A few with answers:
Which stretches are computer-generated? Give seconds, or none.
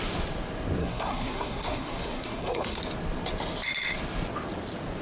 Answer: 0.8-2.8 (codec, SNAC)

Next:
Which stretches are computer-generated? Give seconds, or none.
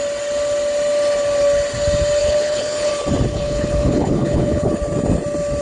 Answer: 2.2-2.9 (codec, HILCodec); 3.3-4.8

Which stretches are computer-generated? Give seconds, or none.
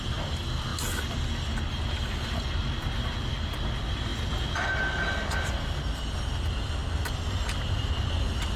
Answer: none